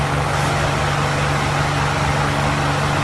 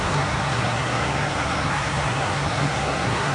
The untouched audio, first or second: first